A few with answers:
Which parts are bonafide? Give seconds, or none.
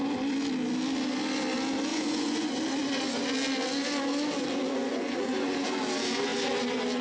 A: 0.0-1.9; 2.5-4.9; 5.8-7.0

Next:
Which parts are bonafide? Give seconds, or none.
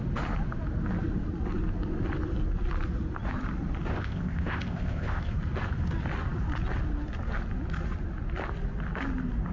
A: 0.0-3.9; 5.2-9.5